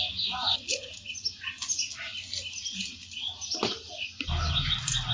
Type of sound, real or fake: real